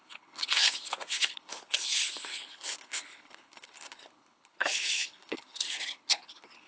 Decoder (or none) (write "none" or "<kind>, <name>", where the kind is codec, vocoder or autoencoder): codec, HILCodec